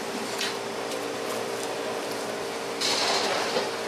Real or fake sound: real